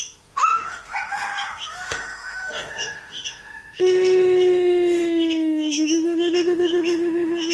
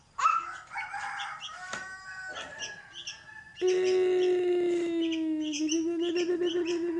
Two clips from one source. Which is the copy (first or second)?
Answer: first